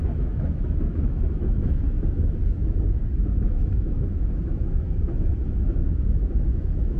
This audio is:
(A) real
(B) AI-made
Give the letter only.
B